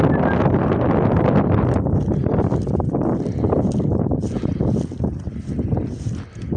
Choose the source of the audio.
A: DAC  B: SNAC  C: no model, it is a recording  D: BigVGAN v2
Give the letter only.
C